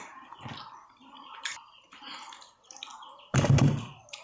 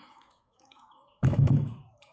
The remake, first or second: second